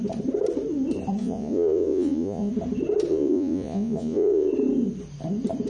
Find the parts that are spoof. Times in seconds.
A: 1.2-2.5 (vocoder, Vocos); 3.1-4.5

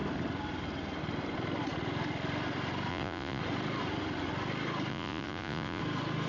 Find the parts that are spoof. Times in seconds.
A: 2.9-3.4 (vocoder, Vocos); 4.9-5.8

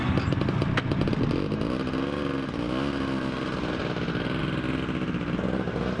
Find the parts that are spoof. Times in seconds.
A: 3.8-4.4 (vocoder, BigVGAN v2)

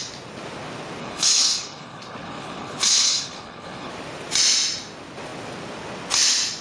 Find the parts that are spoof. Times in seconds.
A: 1.0-3.9 (codec, HILCodec)